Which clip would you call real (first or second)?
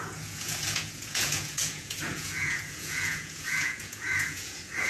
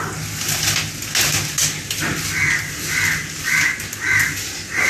second